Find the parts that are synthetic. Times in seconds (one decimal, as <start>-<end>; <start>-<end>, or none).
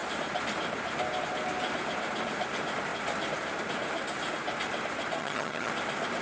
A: 5.2-5.7